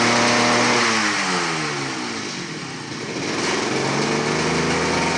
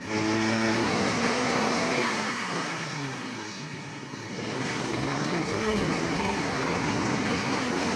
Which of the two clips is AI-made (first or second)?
second